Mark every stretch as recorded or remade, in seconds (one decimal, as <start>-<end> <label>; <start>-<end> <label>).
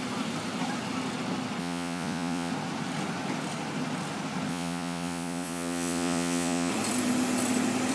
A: 0.0-1.6 recorded; 1.6-2.5 remade; 2.5-4.5 recorded; 4.5-6.7 remade; 6.7-7.9 recorded